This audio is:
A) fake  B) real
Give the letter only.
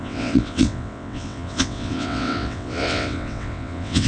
A